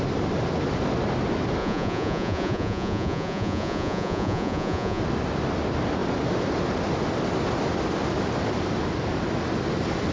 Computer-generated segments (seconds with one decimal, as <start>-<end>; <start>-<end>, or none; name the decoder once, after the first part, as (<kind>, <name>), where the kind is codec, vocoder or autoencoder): 1.6-5.0 (vocoder, Vocos)